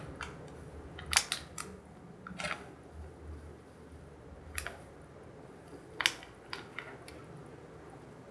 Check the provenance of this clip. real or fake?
real